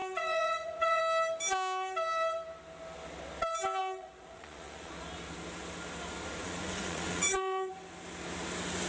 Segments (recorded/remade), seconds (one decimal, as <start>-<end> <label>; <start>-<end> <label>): 0.0-1.0 remade; 1.0-3.8 recorded; 3.8-4.9 remade; 4.9-6.4 recorded; 6.4-7.7 remade; 7.7-8.9 recorded